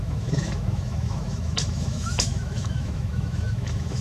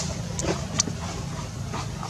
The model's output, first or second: first